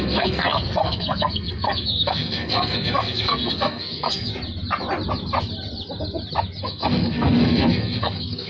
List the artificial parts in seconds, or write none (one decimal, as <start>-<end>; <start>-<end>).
0.0-4.3; 6.6-8.5